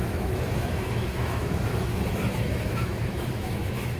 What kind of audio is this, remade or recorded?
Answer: remade